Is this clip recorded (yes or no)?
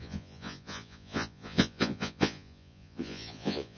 no